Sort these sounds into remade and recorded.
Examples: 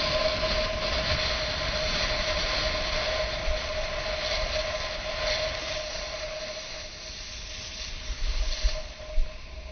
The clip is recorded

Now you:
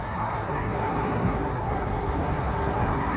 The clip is remade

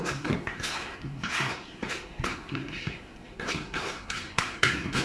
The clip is remade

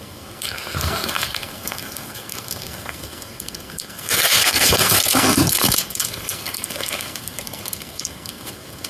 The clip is remade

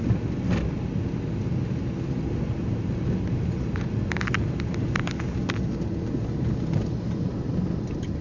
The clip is recorded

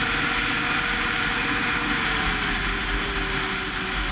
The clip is recorded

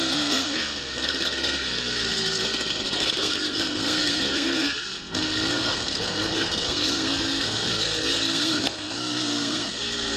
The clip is remade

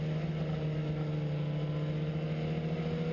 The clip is recorded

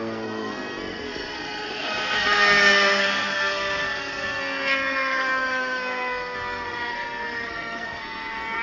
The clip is remade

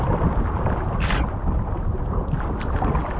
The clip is recorded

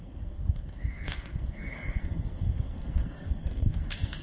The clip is remade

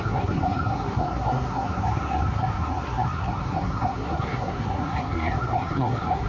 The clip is remade